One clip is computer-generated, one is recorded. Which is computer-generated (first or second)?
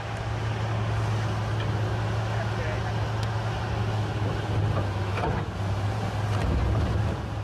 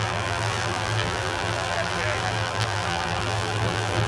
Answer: second